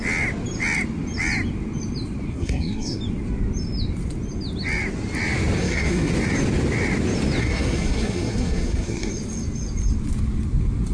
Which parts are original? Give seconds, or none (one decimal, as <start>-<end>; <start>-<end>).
0.0-2.3; 3.0-5.6; 6.1-7.4; 9.1-10.9